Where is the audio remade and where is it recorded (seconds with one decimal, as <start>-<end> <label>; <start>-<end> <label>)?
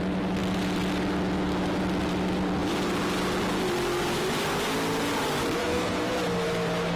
0.0-5.6 recorded; 5.6-6.1 remade; 6.1-7.0 recorded